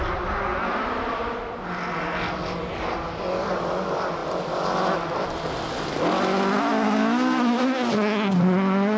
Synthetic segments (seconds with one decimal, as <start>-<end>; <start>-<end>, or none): none